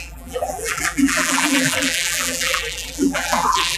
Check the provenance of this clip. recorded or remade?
remade